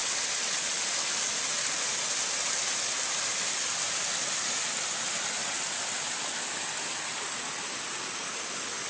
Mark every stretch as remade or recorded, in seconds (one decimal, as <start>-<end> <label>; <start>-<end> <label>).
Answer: 0.0-8.9 recorded